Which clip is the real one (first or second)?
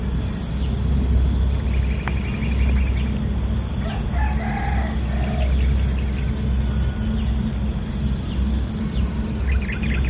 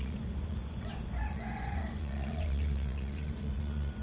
first